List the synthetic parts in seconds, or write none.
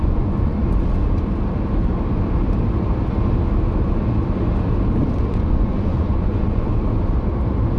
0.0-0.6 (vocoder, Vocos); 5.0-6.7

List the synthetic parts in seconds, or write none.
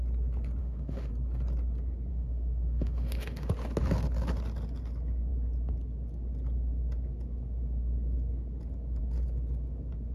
0.6-1.1 (autoencoder, DAC-VAE); 2.1-3.5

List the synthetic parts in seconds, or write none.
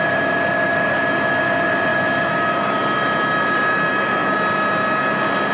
none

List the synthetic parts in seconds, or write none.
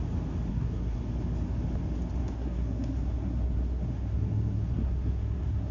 0.5-1.0 (codec, SNAC); 2.2-5.7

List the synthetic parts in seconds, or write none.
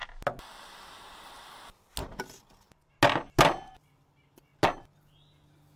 2.0-2.9 (vocoder, BigVGAN v2)